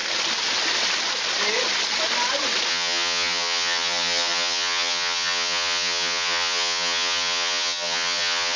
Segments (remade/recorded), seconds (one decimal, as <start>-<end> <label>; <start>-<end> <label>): 0.0-2.7 recorded; 2.7-8.6 remade